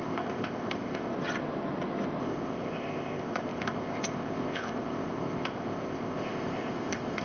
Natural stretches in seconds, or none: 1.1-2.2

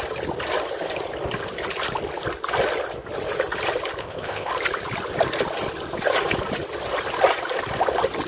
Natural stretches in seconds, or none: 0.0-4.0; 4.5-8.3

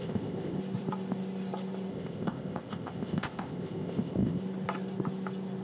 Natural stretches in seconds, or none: 0.6-1.9; 4.4-5.6

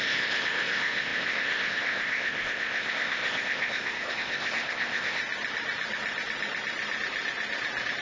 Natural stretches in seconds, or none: 5.2-8.0